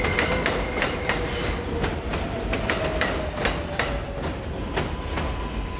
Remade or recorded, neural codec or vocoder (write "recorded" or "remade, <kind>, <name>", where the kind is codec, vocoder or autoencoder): recorded